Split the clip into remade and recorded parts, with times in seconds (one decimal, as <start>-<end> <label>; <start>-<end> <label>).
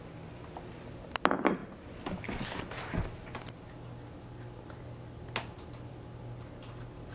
0.0-7.1 recorded